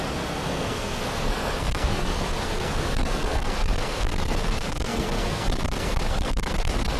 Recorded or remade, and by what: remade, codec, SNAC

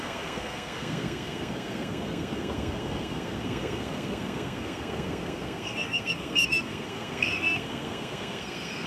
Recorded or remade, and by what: remade, codec, SNAC